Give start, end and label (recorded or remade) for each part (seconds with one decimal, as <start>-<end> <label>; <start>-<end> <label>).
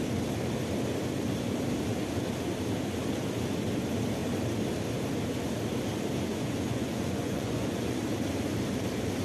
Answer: 0.0-6.3 recorded; 6.3-8.0 remade; 8.0-9.2 recorded